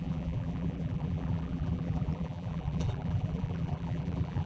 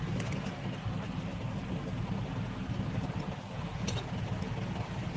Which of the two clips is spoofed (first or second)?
first